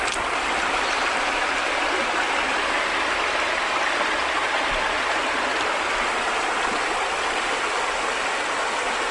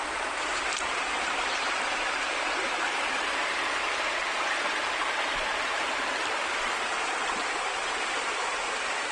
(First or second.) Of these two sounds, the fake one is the second